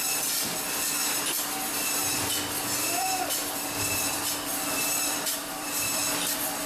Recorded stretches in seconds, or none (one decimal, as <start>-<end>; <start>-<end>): 1.0-2.8; 6.0-6.7